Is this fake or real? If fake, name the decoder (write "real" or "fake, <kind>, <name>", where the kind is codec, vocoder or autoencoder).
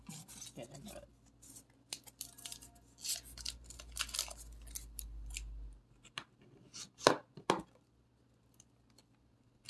real